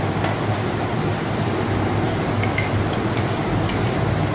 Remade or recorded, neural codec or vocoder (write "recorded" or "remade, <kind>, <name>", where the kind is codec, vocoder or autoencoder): recorded